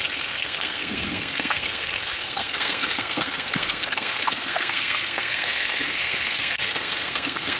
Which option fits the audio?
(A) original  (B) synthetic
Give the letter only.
B